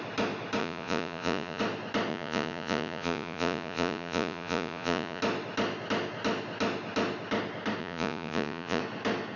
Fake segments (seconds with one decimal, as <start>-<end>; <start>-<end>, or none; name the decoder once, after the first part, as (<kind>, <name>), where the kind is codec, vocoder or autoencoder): 0.6-1.6 (vocoder, Vocos); 2.1-5.2; 7.8-8.8